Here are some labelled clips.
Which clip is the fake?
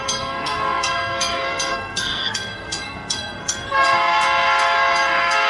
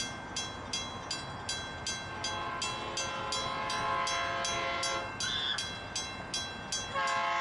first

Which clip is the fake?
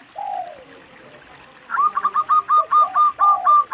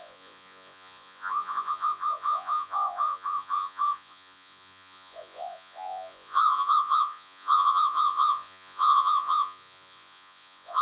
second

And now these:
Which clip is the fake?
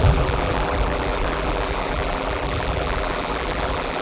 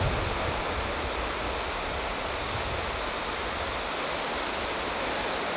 first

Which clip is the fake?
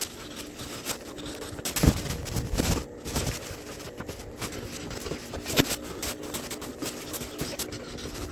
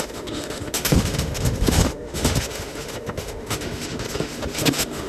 second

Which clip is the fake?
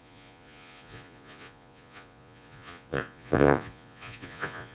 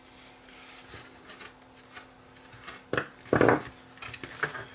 first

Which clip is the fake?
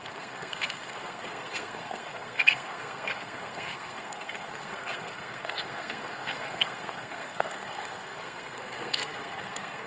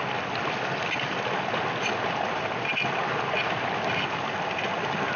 first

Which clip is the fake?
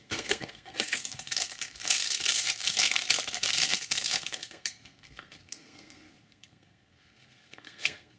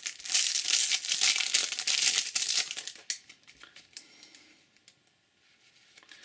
first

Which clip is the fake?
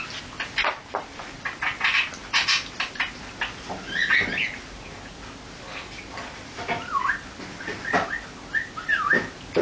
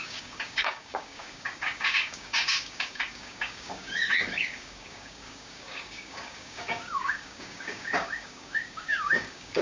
second